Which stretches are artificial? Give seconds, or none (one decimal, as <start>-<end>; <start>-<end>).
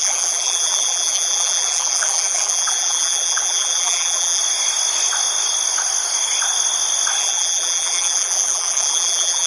0.0-4.4; 7.2-9.5